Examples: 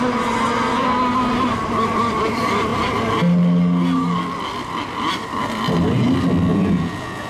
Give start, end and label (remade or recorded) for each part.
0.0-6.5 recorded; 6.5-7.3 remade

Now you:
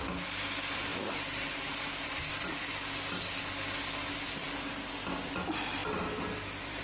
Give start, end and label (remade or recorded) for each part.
0.0-6.8 recorded

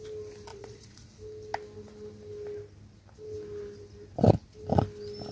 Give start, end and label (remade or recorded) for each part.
0.0-0.5 recorded; 0.5-1.1 remade; 1.1-5.3 recorded

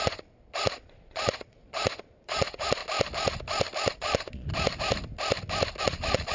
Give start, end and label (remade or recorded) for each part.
0.0-2.8 remade; 2.8-3.9 recorded; 3.9-4.5 remade; 4.5-5.8 recorded; 5.8-6.3 remade

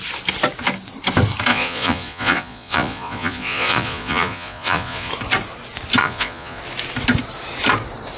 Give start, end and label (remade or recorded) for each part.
0.0-1.5 recorded; 1.5-5.1 remade; 5.1-6.0 recorded; 6.0-6.6 remade; 6.6-8.2 recorded

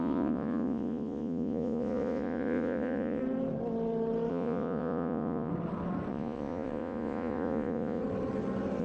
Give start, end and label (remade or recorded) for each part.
0.0-3.2 remade; 3.2-4.3 recorded; 4.3-5.5 remade; 5.5-6.1 recorded; 6.1-8.0 remade; 8.0-8.8 recorded